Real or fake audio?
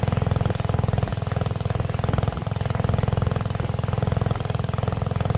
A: real